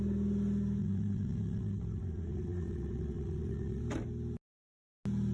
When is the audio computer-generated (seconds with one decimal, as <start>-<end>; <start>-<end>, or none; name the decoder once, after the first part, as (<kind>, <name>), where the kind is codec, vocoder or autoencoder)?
0.8-3.8 (vocoder, WaveNeXt)